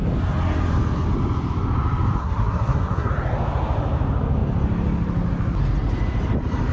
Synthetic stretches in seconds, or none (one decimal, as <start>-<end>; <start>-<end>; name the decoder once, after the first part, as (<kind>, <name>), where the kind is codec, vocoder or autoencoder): 2.2-3.1 (codec, SNAC)